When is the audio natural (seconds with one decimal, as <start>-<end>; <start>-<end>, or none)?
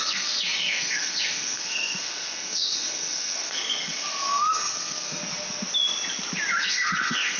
5.2-6.6